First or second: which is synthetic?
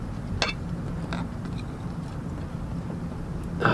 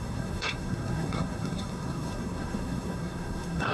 second